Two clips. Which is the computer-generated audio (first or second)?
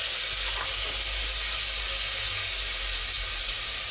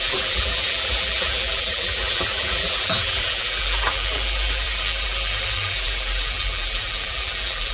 second